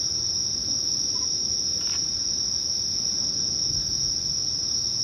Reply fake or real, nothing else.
real